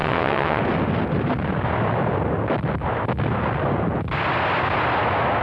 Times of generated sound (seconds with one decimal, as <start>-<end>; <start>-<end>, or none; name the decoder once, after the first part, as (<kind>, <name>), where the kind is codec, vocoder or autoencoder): 0.0-0.6 (vocoder, WaveNeXt)